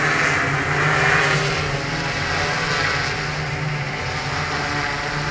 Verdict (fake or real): real